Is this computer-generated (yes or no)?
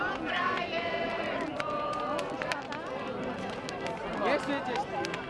no